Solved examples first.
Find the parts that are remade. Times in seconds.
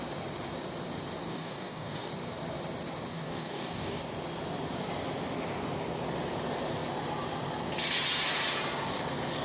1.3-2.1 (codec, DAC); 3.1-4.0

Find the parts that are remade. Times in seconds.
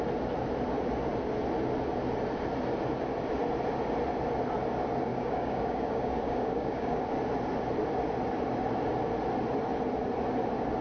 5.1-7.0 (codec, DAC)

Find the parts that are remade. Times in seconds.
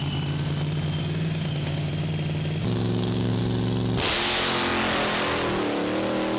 1.0-1.9 (codec, DAC); 2.6-3.4